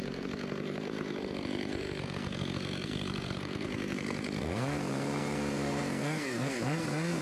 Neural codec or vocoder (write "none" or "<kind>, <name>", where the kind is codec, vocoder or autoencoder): codec, SNAC